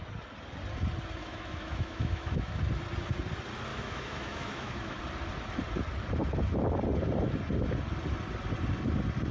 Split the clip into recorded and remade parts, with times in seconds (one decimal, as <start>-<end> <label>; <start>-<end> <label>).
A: 0.0-1.2 recorded; 1.2-2.6 remade; 2.6-3.7 recorded; 3.7-5.0 remade; 5.0-9.3 recorded